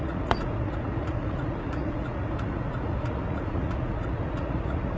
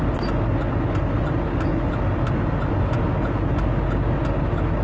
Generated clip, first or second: first